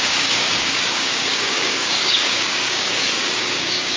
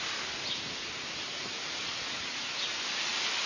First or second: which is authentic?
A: second